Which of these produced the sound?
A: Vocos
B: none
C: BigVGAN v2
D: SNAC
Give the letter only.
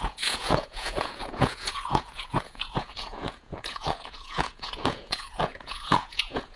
A